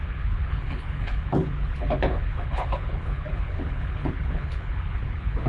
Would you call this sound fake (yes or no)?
yes